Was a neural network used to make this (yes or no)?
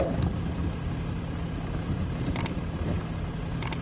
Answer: no